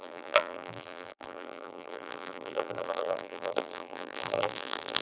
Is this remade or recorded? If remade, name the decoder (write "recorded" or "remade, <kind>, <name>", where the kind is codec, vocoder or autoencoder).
remade, vocoder, BigVGAN v2